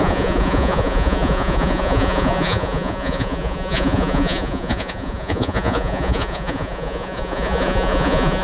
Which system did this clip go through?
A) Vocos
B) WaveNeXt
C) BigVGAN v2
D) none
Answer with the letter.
A